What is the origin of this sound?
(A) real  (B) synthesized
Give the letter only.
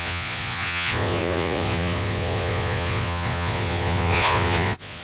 B